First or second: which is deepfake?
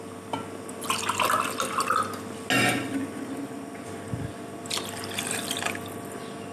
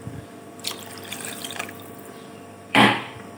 second